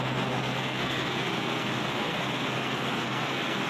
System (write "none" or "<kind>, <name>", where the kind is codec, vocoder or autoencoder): codec, SNAC